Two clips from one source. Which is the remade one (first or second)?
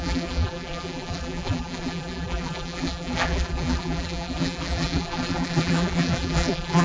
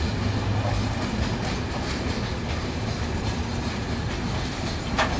first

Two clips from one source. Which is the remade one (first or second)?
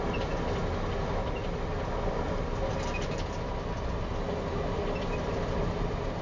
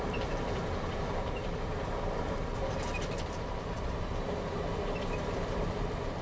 second